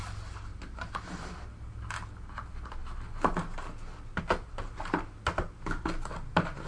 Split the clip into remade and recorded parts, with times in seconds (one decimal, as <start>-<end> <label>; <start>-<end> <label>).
0.0-6.7 recorded